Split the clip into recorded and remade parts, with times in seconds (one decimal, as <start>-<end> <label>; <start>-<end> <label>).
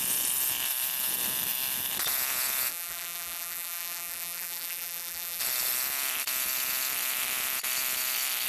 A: 0.0-2.7 recorded; 2.7-5.4 remade; 5.4-8.5 recorded